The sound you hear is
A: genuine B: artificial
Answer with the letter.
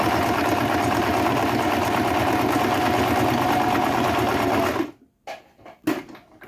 A